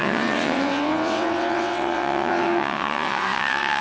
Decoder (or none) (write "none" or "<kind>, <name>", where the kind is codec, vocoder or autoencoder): vocoder, WaveNeXt